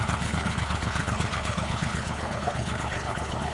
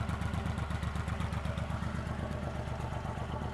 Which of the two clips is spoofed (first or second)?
first